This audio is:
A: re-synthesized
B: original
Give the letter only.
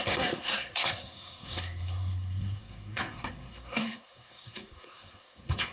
A